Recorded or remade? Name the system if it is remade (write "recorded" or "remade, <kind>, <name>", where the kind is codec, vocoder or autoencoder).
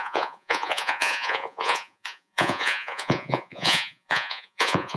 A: remade, vocoder, Vocos